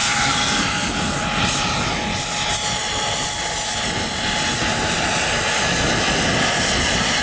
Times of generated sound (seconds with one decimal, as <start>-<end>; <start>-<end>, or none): 0.0-0.9